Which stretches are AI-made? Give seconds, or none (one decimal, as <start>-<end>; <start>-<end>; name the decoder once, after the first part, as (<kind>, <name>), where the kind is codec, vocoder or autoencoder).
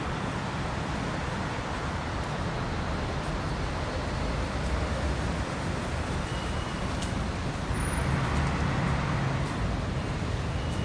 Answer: 0.0-8.0 (vocoder, BigVGAN v2); 8.6-10.8